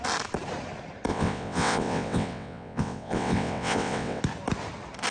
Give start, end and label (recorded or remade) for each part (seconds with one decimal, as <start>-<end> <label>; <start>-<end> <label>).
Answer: 0.0-1.1 recorded; 1.1-4.2 remade; 4.2-5.1 recorded